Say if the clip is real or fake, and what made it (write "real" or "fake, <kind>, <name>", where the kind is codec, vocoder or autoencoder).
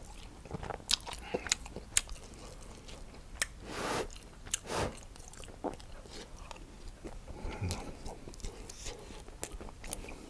real